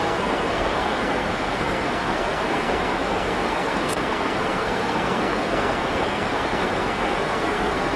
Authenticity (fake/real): fake